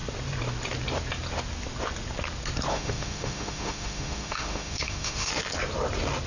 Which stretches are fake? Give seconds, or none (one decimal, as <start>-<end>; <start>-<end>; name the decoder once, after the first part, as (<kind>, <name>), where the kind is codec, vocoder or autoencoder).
2.7-5.3 (autoencoder, DAC-VAE)